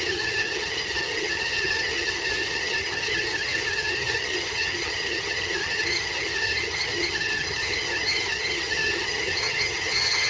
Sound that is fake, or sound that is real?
fake